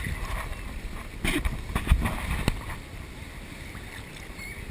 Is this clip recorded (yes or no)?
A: yes